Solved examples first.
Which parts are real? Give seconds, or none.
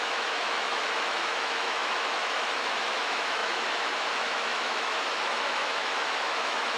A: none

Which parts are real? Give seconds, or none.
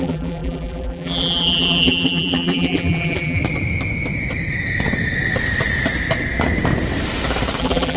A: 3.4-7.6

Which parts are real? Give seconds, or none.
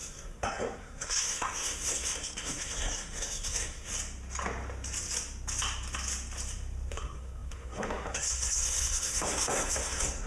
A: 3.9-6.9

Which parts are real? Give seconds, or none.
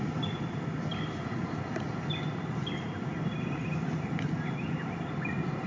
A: 0.0-5.7